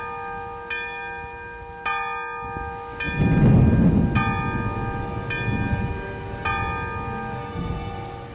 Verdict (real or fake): real